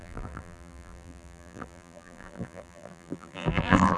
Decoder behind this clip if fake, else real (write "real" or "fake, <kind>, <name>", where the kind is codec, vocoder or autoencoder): fake, vocoder, BigVGAN v2